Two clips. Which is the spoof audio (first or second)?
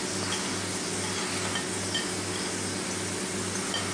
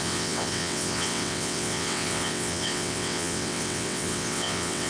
second